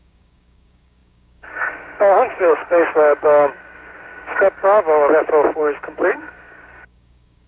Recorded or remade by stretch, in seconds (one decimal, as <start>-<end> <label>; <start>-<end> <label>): 0.0-4.1 remade; 4.1-5.6 recorded; 5.6-7.5 remade